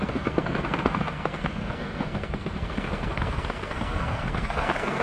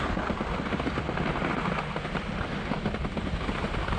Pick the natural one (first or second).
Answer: second